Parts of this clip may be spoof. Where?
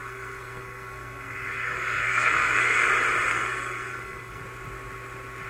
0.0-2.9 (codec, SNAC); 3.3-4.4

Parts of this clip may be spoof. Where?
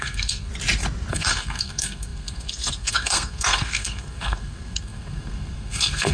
0.0-0.5 (codec, SNAC); 1.1-6.1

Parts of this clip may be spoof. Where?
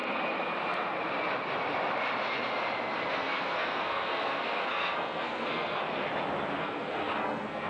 3.1-5.8 (codec, SNAC); 6.6-7.7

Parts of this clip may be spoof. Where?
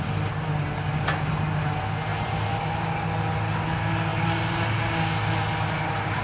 none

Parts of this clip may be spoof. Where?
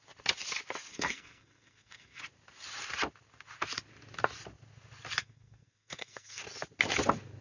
0.9-2.2 (codec, SNAC); 5.2-6.4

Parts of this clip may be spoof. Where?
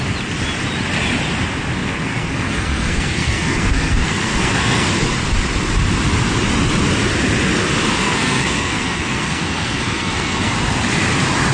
1.8-4.9 (codec, SNAC); 8.0-10.5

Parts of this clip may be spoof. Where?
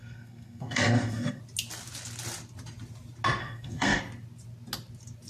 0.0-1.4 (codec, SNAC); 3.4-4.0